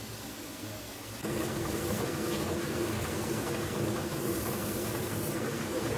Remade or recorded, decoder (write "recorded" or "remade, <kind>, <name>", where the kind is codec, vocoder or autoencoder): remade, codec, SNAC